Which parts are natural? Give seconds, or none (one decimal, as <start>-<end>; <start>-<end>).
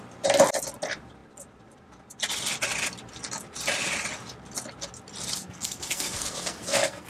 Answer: 0.0-5.4